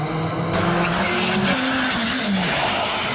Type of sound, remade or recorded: recorded